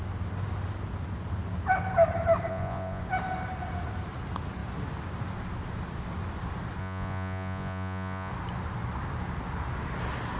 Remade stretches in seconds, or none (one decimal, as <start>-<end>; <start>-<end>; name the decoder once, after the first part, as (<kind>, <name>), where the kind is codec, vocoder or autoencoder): 2.5-3.0 (vocoder, Vocos); 6.8-8.3